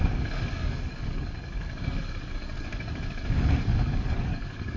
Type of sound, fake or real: fake